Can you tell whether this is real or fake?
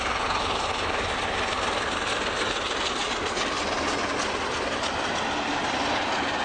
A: real